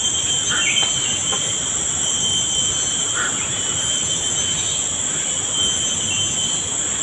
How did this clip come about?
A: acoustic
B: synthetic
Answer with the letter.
A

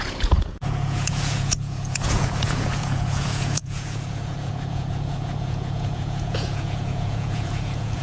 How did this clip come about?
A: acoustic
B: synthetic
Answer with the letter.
B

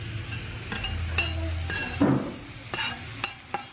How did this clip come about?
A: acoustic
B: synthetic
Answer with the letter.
A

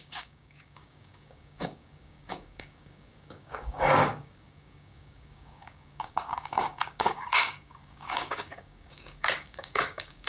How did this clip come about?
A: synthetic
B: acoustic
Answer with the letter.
A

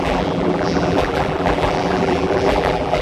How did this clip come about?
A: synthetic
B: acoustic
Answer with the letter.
A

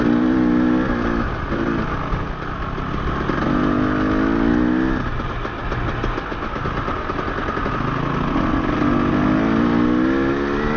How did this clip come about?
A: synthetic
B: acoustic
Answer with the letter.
B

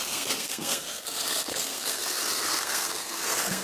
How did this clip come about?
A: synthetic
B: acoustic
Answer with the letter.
A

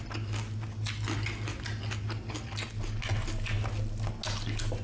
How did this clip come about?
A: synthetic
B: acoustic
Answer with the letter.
B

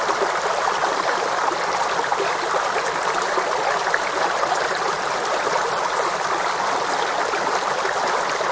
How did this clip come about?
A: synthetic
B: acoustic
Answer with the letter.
B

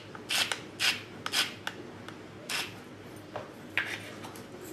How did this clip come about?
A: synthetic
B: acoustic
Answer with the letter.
B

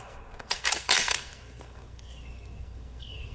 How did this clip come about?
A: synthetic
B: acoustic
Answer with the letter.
A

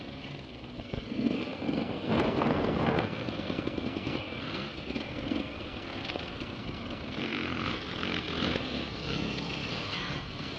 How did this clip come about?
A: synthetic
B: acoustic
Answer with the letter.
A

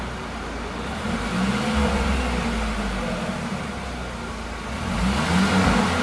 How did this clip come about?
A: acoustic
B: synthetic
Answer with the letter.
A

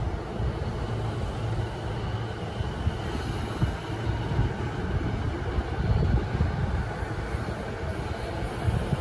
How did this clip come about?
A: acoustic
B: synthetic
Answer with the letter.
A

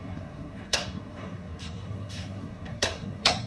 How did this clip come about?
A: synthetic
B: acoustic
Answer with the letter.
A